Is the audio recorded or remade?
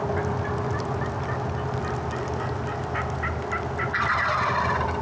recorded